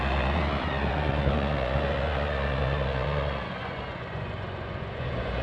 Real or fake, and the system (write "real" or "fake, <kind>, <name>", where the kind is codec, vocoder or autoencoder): fake, vocoder, Vocos